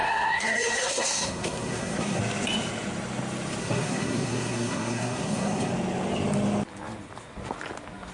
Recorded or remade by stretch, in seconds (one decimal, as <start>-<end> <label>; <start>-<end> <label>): 0.0-2.2 remade; 2.2-3.6 recorded; 3.6-5.7 remade; 5.7-8.1 recorded